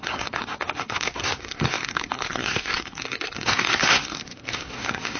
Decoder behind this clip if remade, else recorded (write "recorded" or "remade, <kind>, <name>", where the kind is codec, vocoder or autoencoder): remade, codec, SNAC